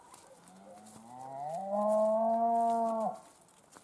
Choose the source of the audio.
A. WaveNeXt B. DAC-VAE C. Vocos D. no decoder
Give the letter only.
D